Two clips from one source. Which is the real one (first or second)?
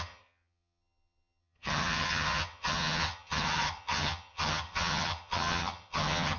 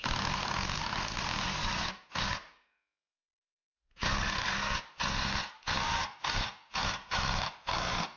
second